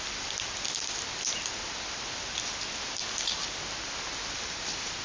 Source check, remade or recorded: recorded